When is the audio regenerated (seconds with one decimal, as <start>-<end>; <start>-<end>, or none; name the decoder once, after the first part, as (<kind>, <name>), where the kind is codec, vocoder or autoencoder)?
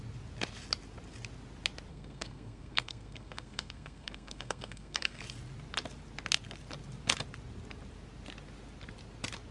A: 1.9-5.2 (codec, SNAC)